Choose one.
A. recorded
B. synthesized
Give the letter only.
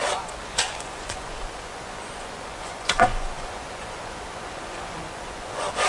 B